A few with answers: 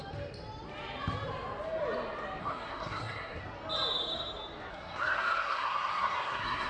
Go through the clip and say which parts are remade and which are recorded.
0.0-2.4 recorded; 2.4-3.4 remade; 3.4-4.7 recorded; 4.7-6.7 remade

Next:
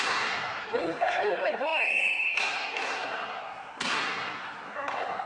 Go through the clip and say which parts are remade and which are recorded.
0.0-5.3 remade

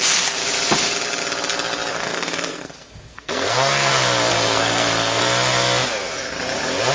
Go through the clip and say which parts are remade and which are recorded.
0.0-1.9 recorded; 1.9-3.9 remade; 3.9-4.3 recorded; 4.3-5.2 remade; 5.2-6.9 recorded

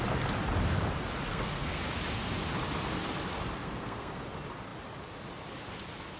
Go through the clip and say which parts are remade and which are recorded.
0.0-1.3 recorded; 1.3-1.8 remade; 1.8-3.6 recorded; 3.6-4.2 remade; 4.2-6.2 recorded

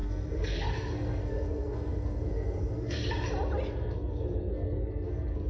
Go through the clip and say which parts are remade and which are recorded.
0.0-3.0 remade; 3.0-3.7 recorded; 3.7-5.5 remade

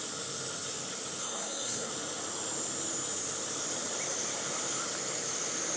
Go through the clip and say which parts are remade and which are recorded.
0.0-1.2 recorded; 1.2-1.9 remade; 1.9-5.8 recorded